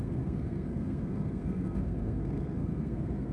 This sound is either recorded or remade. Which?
remade